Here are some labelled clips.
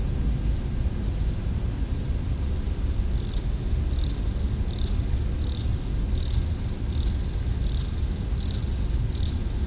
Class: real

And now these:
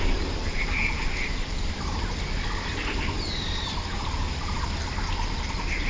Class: real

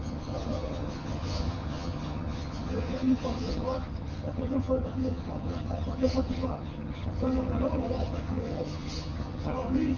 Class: fake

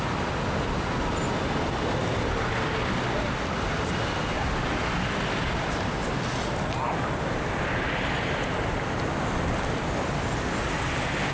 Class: real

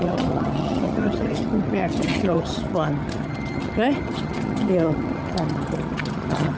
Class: fake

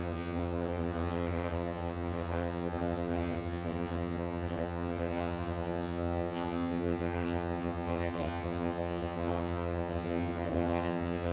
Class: fake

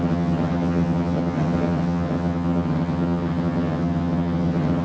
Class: fake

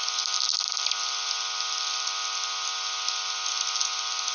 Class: real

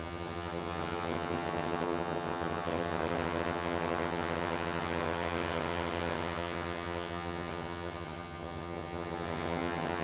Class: fake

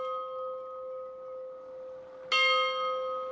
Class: real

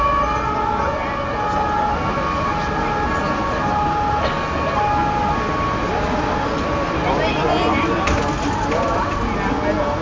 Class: real